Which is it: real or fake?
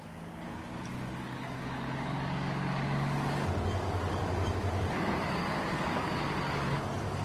fake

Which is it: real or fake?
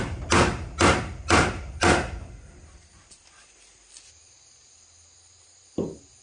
real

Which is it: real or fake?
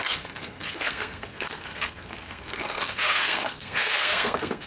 fake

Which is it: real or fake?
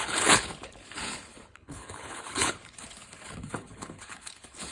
fake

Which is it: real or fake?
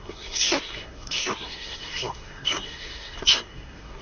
fake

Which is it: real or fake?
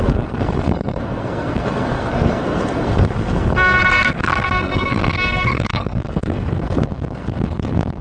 fake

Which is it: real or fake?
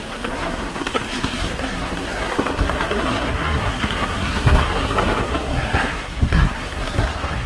fake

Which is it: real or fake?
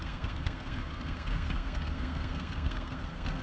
fake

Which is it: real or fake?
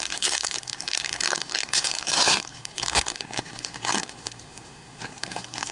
fake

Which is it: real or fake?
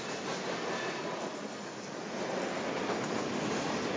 real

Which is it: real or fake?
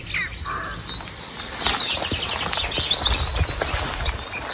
real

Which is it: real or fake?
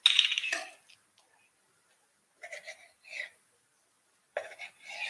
real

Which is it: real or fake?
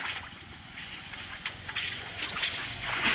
fake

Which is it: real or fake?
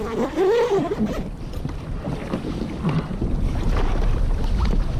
real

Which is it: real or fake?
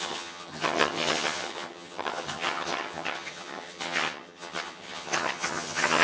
fake